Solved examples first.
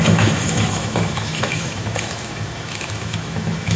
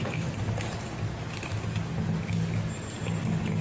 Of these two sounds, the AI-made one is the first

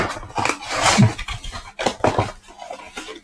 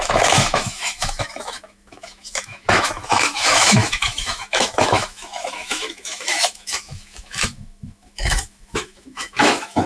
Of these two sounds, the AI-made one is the second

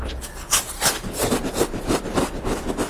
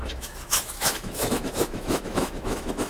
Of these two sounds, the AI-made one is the second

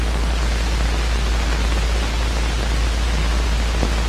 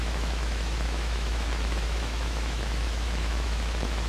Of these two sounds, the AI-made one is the second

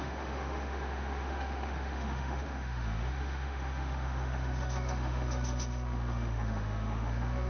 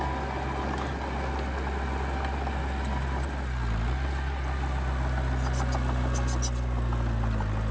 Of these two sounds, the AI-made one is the first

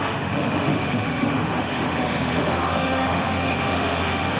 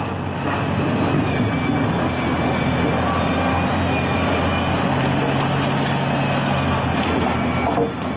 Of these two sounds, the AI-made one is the first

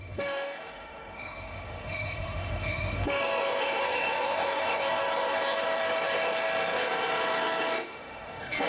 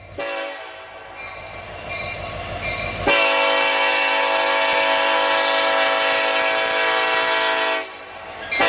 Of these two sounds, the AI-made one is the first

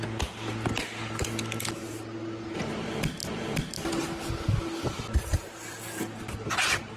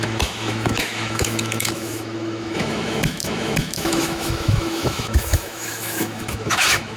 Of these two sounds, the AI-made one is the second